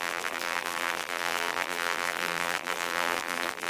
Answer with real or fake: fake